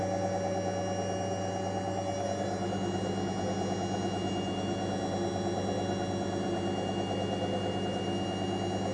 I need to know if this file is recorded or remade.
recorded